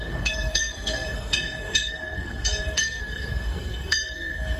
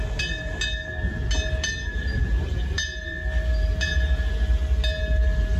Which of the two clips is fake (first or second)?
first